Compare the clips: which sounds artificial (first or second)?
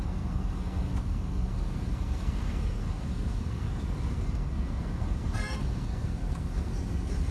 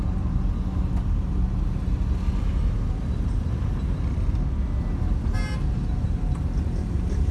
first